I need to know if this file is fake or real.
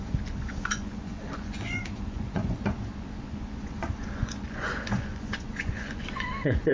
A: fake